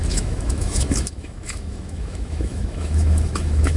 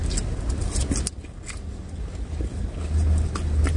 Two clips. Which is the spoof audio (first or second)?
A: first